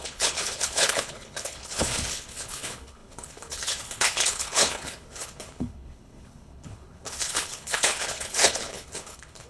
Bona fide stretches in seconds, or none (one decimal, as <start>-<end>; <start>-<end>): none